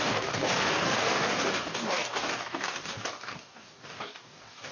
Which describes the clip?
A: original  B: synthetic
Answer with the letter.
B